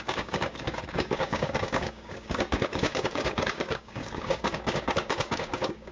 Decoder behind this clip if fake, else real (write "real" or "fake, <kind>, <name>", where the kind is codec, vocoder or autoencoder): fake, codec, DAC